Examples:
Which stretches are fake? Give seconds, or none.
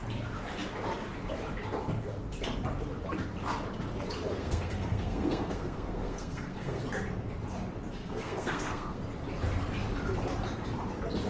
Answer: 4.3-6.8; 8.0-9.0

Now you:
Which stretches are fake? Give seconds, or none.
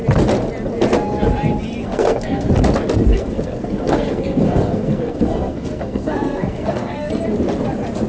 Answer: 1.8-2.5; 3.1-7.1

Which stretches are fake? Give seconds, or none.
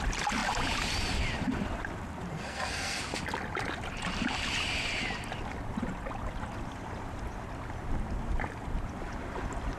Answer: 2.3-3.0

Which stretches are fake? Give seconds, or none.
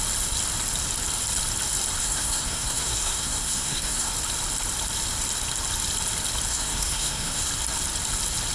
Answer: 2.0-4.1; 6.5-7.5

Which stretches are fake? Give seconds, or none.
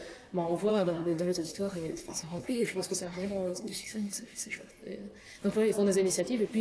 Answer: 0.7-4.7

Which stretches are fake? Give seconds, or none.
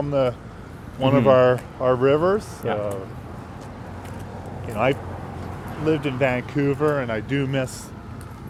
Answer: none